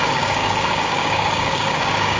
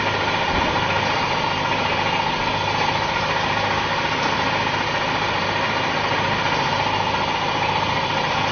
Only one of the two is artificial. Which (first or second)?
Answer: first